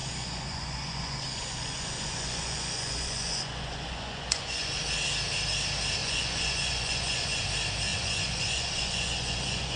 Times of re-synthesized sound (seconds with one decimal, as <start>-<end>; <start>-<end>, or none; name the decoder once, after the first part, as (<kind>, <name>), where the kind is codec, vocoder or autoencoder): 0.0-4.8 (vocoder, Vocos); 6.0-7.4; 7.9-9.8